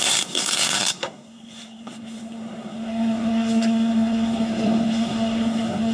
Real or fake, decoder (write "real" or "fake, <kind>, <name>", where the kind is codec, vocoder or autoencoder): fake, codec, SNAC